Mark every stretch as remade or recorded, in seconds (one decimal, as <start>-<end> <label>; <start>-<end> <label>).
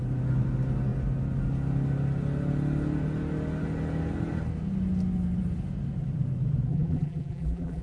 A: 0.0-6.7 recorded; 6.7-7.8 remade